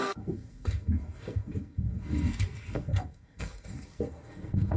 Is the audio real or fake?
fake